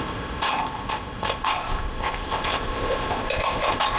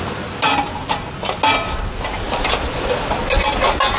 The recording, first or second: second